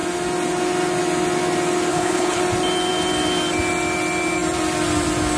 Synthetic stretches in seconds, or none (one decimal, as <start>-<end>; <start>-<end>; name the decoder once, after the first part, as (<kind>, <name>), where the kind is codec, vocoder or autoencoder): 1.9-2.4 (codec, HILCodec)